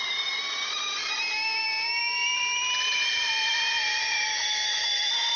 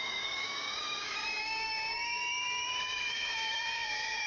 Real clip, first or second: first